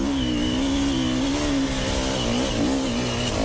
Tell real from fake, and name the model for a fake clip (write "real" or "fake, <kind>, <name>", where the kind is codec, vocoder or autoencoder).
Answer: real